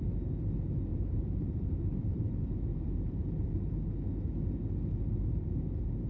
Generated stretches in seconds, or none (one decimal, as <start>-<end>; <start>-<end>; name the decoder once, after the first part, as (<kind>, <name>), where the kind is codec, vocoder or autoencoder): 0.9-3.5 (vocoder, BigVGAN v2)